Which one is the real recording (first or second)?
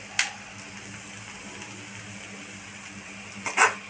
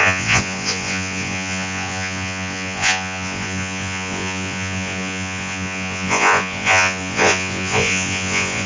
first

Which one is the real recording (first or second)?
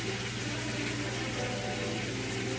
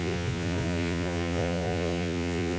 first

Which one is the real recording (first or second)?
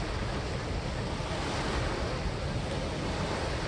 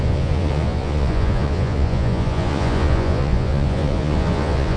first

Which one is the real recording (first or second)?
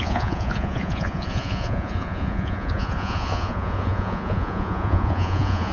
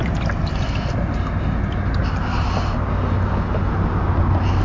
second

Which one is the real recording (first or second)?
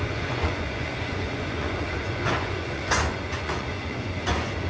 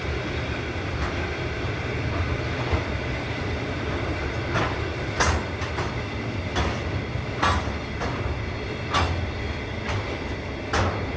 second